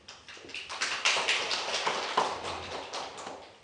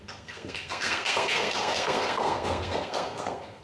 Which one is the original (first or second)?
first